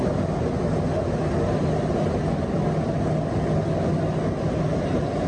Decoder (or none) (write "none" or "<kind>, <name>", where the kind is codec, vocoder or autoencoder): none